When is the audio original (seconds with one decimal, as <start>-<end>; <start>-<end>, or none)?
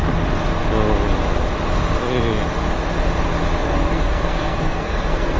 0.0-3.6